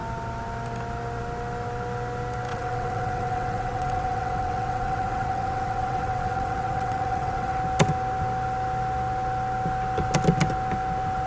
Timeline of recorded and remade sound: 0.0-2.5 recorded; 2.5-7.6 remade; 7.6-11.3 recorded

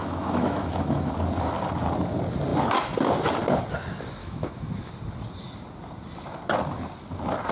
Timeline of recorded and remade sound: 0.0-1.1 remade; 1.1-4.2 recorded; 4.2-4.9 remade; 4.9-7.5 recorded

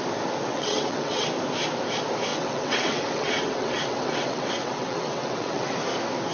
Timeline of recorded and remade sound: 0.0-0.5 recorded; 0.5-1.3 remade; 1.3-2.3 recorded; 2.3-5.7 remade; 5.7-6.3 recorded

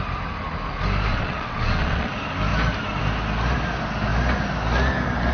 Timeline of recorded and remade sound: 0.0-1.1 recorded; 1.1-2.1 remade; 2.1-5.3 recorded

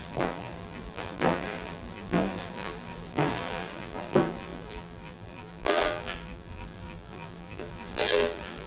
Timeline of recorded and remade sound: 0.0-8.7 remade

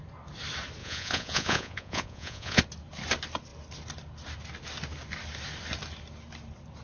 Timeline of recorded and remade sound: 0.0-0.8 recorded; 0.8-2.6 remade; 2.6-6.8 recorded

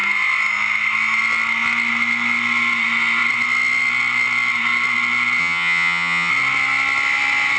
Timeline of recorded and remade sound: 0.0-5.4 recorded; 5.4-6.3 remade; 6.3-7.6 recorded

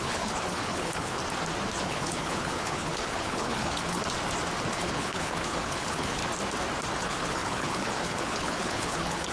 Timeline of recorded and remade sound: 0.0-1.2 remade; 1.2-1.8 recorded; 1.8-4.0 remade; 4.0-4.7 recorded; 4.7-6.2 remade; 6.2-7.0 recorded; 7.0-9.3 remade